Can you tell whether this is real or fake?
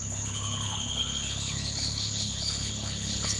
fake